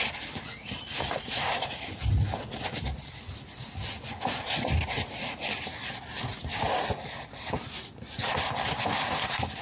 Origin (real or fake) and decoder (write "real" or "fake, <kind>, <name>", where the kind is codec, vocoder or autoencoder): real